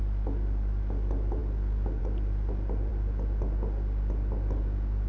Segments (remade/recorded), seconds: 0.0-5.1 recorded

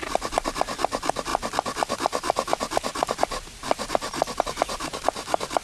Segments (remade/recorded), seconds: 0.0-5.6 recorded

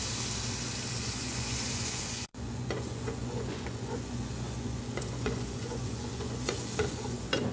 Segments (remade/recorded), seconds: 0.0-1.0 recorded; 1.0-7.5 remade

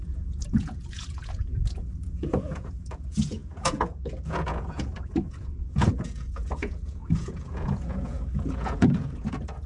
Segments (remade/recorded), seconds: 0.0-9.7 remade

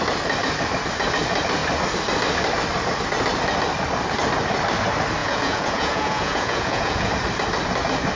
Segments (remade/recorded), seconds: 0.0-5.2 recorded; 5.2-7.1 remade; 7.1-8.2 recorded

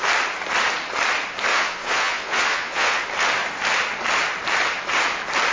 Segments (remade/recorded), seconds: 0.0-1.5 recorded; 1.5-3.0 remade; 3.0-5.5 recorded